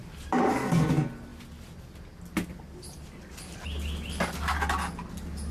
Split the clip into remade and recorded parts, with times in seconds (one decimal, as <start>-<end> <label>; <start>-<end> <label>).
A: 0.0-0.5 remade; 0.5-5.5 recorded